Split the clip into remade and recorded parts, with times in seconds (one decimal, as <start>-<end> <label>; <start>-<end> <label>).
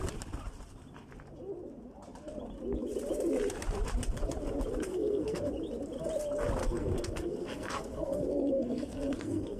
0.0-4.9 recorded; 4.9-5.5 remade; 5.5-6.6 recorded; 6.6-9.6 remade